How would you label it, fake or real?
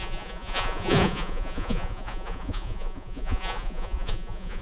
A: fake